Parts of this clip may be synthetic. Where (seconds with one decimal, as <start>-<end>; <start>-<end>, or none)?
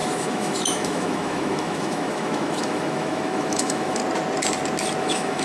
0.0-4.0; 5.0-5.4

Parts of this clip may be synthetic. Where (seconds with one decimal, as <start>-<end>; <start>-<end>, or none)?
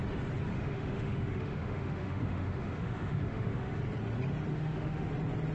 0.5-3.8; 4.5-5.1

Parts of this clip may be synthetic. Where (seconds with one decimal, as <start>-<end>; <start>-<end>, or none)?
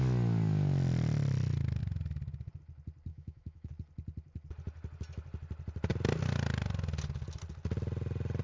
3.1-3.7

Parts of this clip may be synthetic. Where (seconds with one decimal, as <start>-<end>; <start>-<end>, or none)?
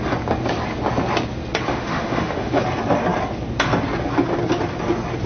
1.7-2.6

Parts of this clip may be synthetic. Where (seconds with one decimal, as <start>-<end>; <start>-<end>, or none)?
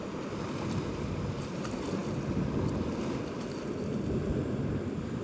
none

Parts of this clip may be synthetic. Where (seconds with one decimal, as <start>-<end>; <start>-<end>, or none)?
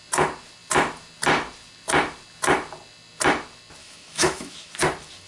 3.8-4.7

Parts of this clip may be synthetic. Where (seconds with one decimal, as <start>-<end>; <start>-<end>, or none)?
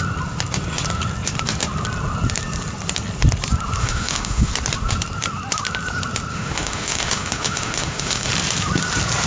3.8-4.5; 6.3-8.3